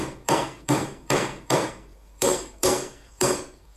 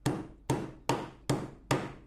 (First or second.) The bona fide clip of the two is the second